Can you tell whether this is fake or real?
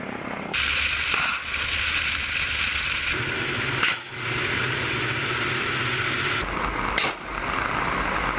real